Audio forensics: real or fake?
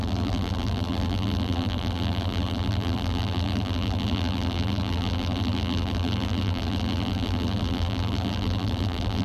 fake